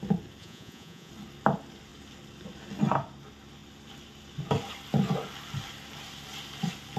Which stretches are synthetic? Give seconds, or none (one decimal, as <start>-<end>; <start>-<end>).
0.4-1.1